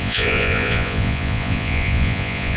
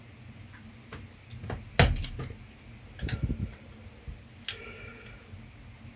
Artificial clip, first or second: first